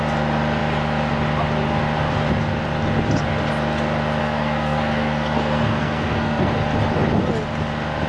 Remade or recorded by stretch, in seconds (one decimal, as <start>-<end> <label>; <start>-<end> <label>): 0.0-4.2 recorded; 4.2-6.5 remade; 6.5-8.1 recorded